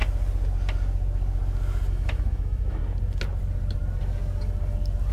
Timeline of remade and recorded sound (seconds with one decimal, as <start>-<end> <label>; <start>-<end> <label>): 0.0-1.9 recorded; 1.9-2.8 remade; 2.8-5.1 recorded

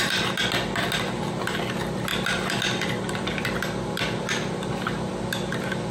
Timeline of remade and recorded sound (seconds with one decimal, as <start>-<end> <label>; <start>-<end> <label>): 0.0-5.9 recorded

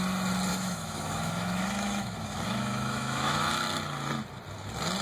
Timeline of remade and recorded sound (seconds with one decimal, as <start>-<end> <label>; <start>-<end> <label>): 0.0-0.5 recorded; 0.5-3.5 remade; 3.5-5.0 recorded

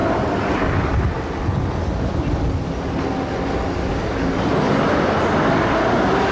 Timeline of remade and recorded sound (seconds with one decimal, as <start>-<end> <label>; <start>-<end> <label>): 0.0-6.3 recorded

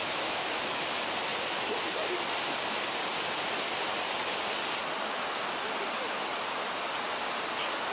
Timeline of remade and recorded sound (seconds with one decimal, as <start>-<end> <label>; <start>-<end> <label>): 0.0-0.8 remade; 0.8-7.9 recorded

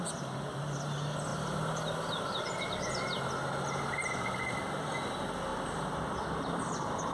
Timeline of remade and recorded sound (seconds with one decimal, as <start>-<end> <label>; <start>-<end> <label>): 0.0-7.1 recorded

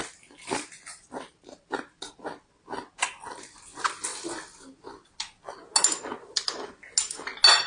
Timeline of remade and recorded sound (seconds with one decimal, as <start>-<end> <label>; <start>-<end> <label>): 0.0-7.7 recorded

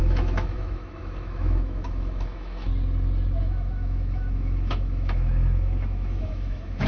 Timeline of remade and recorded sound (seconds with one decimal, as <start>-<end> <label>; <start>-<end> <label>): 0.0-2.7 remade; 2.7-3.4 recorded; 3.4-6.9 remade